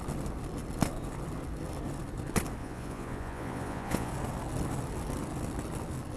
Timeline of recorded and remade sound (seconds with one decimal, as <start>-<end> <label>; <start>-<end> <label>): 0.0-2.6 recorded; 2.6-4.1 remade; 4.1-6.2 recorded